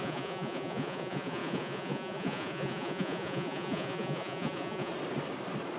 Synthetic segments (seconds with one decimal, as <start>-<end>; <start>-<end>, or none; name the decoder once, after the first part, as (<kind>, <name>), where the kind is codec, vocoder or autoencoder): 0.0-4.9 (vocoder, Vocos)